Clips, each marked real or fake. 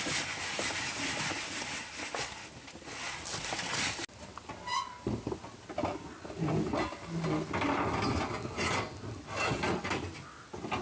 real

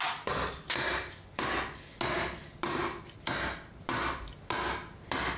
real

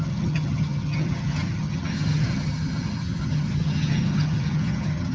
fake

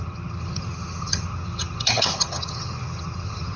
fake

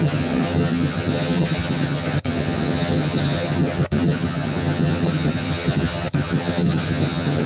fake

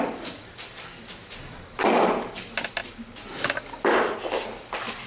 real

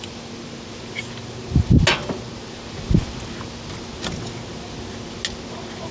real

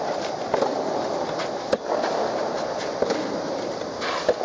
real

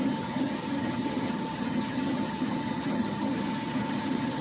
fake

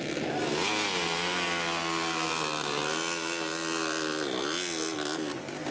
real